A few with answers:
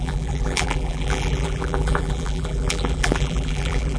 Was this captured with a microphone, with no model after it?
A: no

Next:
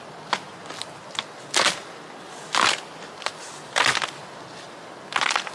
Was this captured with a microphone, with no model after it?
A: yes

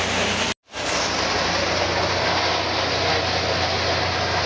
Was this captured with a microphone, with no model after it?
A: yes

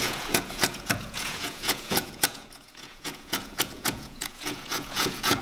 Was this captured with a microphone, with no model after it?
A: no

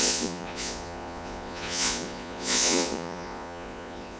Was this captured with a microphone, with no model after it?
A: no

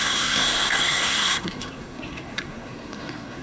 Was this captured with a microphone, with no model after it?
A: no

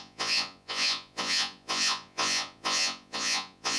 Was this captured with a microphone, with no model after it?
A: no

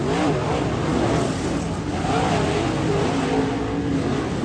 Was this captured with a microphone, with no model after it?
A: yes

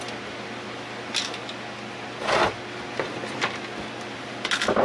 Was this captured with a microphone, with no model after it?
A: yes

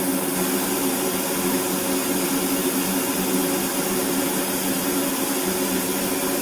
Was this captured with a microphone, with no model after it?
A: yes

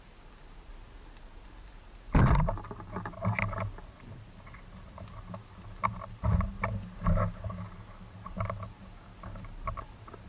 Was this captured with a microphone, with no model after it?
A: yes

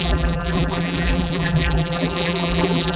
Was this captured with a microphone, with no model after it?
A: no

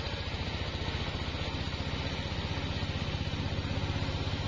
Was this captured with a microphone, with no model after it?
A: yes